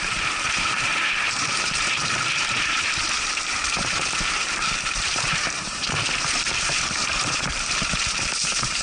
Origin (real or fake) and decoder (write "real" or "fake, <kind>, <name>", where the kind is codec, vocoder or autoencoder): fake, vocoder, BigVGAN v2